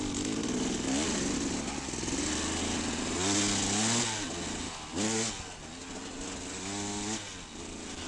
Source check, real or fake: real